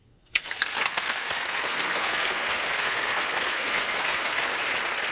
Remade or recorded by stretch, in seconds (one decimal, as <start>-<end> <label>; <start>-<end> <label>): 0.0-4.5 remade; 4.5-5.1 recorded